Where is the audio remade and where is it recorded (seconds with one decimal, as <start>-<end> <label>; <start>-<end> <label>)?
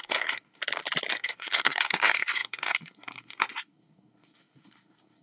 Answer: 0.0-0.6 remade; 0.6-1.1 recorded; 1.1-5.2 remade